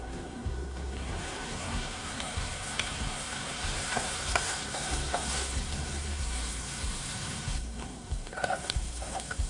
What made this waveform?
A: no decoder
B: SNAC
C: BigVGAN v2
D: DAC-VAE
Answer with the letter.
B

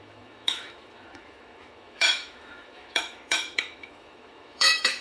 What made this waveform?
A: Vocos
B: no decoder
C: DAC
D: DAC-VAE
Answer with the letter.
D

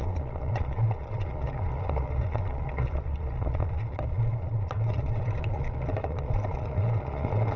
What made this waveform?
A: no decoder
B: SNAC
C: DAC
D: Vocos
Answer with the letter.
D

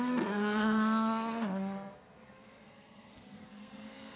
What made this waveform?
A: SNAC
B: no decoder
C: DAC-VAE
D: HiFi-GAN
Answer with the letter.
A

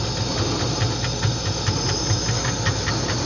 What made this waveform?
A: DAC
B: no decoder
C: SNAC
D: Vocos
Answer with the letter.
B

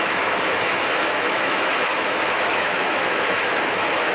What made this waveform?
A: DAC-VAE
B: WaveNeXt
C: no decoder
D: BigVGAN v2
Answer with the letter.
A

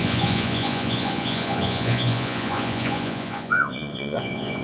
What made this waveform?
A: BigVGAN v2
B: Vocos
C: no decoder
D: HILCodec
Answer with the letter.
B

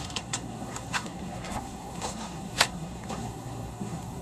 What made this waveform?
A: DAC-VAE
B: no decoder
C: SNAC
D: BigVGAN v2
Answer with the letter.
C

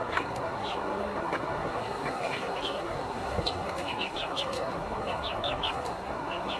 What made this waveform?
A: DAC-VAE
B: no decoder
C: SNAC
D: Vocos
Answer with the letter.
C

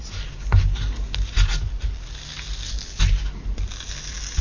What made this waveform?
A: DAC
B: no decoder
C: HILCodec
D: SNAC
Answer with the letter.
B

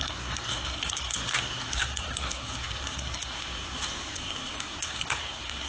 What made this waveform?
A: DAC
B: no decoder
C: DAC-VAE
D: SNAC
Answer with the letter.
D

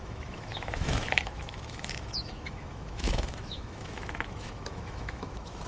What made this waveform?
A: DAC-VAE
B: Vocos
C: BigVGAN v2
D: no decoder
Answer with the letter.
A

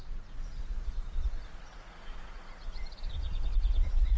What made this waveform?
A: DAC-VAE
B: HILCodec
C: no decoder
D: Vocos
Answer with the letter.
D